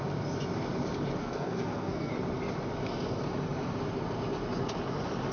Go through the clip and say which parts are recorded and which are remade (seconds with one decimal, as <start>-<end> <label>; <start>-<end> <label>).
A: 0.0-1.2 recorded; 1.2-2.1 remade; 2.1-5.3 recorded